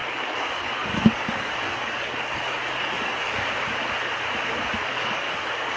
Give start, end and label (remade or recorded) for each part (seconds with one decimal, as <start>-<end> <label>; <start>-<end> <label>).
0.0-3.5 remade; 3.5-4.8 recorded; 4.8-5.8 remade